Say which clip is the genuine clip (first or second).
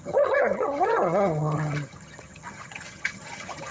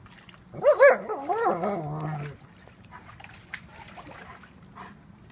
second